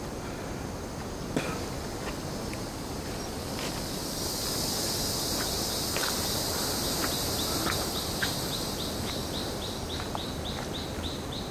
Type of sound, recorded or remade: recorded